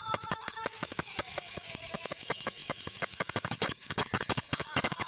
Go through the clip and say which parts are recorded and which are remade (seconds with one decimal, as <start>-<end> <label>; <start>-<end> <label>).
0.0-5.1 remade